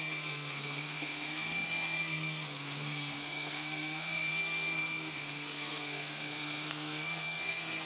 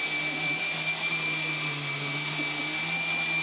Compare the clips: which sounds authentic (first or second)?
second